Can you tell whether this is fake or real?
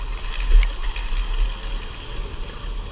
real